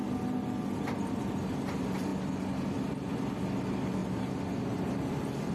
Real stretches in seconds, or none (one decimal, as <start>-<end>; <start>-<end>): 0.0-5.5